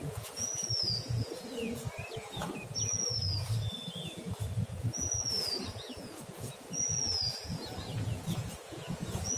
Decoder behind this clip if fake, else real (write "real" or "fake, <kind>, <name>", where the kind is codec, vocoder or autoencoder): fake, vocoder, Vocos